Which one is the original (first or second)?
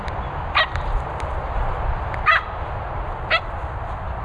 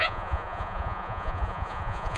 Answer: first